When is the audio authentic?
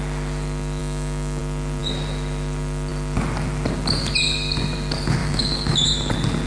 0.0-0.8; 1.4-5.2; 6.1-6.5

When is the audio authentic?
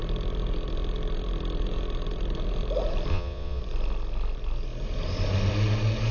0.0-3.1; 3.6-6.1